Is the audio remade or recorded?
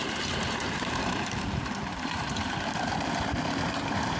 remade